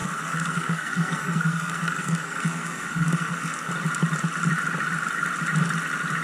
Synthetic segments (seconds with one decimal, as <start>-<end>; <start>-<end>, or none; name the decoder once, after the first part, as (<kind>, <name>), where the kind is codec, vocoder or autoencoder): 0.0-3.7 (codec, SNAC)